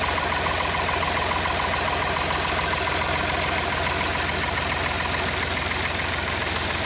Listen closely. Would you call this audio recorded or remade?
recorded